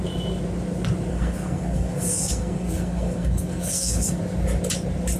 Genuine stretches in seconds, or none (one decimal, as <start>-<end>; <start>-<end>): 0.0-1.1; 4.2-5.2

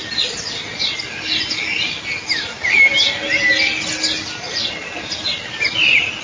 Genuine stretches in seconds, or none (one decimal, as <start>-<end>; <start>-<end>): 0.0-6.2